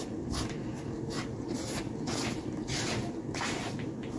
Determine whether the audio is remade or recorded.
recorded